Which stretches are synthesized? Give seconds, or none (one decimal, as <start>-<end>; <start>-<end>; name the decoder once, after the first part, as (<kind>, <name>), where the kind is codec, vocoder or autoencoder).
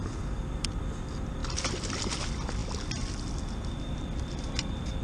none